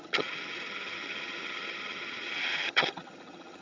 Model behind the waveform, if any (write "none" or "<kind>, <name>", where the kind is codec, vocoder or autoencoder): vocoder, HiFi-GAN